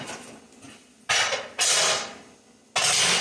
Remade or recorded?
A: recorded